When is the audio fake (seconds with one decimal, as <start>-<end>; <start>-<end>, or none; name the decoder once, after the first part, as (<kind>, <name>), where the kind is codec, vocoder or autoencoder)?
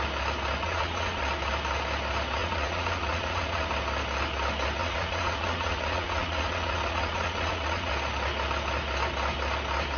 0.6-1.2 (vocoder, Vocos); 2.4-3.7; 4.8-7.9